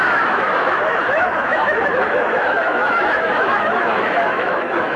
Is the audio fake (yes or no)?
yes